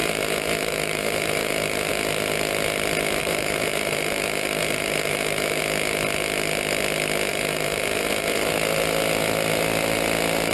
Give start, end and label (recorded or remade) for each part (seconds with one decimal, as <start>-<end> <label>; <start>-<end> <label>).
0.0-1.9 remade; 1.9-3.2 recorded; 3.2-5.6 remade; 5.6-7.3 recorded; 7.3-8.5 remade; 8.5-10.5 recorded